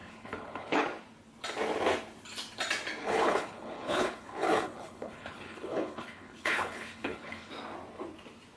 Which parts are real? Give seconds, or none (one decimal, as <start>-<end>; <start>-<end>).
0.8-3.0; 7.5-8.6